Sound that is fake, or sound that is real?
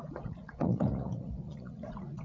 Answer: fake